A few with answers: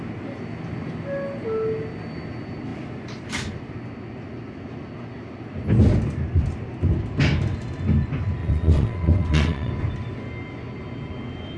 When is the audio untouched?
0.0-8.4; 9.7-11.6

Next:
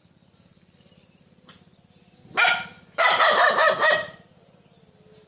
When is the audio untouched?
0.0-5.3

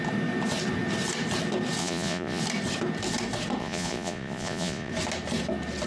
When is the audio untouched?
0.0-1.8; 2.4-3.6; 4.9-5.9